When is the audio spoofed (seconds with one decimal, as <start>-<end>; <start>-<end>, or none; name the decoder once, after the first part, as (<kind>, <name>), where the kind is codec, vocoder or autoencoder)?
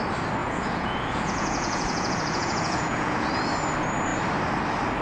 0.4-3.4 (vocoder, Vocos)